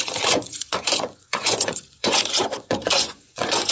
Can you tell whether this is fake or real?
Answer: fake